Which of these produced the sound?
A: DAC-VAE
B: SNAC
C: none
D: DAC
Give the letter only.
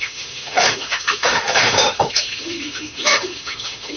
A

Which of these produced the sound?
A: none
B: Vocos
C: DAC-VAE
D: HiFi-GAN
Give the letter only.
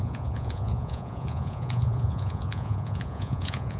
B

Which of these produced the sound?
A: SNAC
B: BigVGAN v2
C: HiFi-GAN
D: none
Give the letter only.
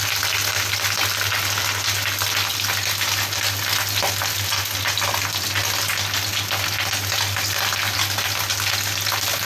D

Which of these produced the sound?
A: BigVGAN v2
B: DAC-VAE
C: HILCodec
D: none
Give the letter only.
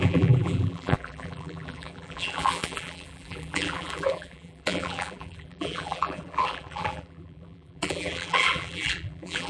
A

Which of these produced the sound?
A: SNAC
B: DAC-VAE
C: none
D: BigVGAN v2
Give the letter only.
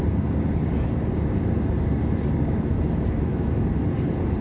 D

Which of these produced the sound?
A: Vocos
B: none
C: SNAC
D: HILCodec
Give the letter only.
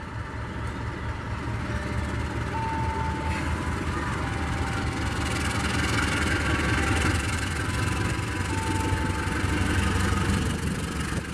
B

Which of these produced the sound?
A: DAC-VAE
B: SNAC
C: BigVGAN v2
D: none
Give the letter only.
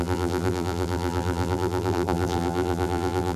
C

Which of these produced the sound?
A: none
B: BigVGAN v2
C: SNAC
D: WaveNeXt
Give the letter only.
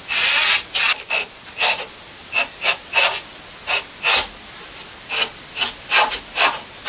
A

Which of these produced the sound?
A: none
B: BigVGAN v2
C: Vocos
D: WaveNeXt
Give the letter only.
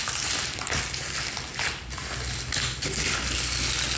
A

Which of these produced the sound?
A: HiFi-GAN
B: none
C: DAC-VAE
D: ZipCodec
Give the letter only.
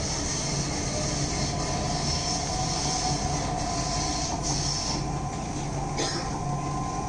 B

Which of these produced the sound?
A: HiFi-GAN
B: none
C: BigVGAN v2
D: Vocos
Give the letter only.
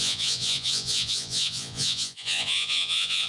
D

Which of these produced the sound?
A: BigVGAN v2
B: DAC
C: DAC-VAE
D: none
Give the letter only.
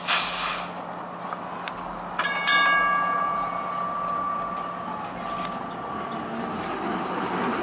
D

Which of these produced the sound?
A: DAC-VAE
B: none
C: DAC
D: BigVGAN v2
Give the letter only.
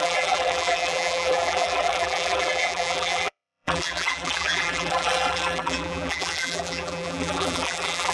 D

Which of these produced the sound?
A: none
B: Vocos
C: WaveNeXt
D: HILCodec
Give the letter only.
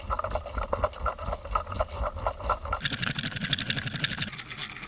A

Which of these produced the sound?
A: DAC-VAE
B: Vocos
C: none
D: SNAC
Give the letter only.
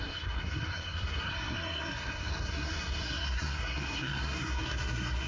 D